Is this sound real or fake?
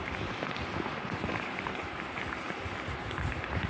fake